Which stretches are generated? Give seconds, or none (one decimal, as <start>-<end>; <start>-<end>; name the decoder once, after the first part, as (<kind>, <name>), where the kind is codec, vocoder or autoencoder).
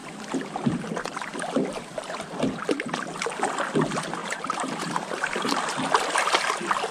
4.2-5.6 (vocoder, BigVGAN v2)